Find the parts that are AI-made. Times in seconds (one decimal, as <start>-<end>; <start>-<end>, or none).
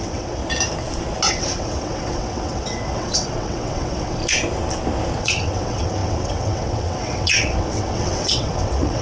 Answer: 0.0-0.4; 1.3-4.2; 5.2-9.0